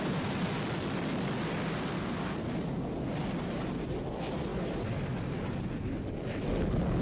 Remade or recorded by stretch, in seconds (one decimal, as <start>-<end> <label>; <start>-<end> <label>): 0.0-7.0 recorded

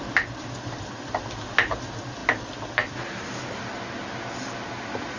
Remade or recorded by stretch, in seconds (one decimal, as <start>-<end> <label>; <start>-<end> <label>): 0.0-5.2 recorded

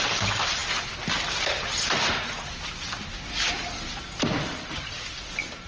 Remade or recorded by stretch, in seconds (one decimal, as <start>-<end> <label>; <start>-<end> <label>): 0.0-5.7 recorded

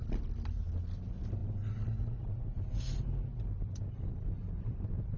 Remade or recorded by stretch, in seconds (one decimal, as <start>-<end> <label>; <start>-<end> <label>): 0.0-5.2 recorded